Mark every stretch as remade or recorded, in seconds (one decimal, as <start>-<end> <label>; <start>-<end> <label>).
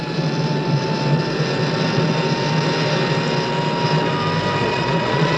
0.0-4.6 recorded; 4.6-5.4 remade